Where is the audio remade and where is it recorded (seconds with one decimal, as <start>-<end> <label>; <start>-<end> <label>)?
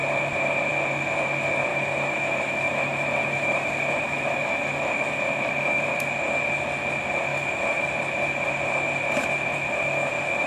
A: 0.0-1.7 recorded; 1.7-5.9 remade; 5.9-7.3 recorded; 7.3-7.9 remade; 7.9-9.5 recorded; 9.5-10.1 remade; 10.1-10.5 recorded